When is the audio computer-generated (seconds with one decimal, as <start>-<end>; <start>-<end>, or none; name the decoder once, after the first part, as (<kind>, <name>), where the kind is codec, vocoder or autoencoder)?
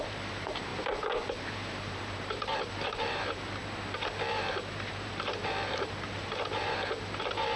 0.0-0.7 (vocoder, BigVGAN v2); 1.4-3.6; 4.3-7.6